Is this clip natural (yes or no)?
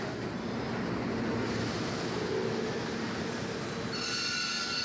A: yes